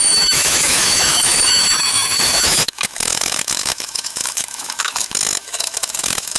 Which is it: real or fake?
fake